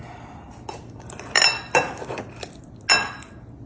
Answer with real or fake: real